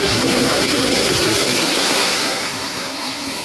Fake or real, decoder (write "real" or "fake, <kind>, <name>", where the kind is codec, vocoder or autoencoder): fake, codec, SNAC